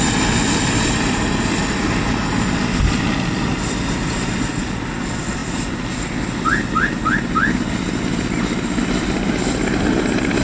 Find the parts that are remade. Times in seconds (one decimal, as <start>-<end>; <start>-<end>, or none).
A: none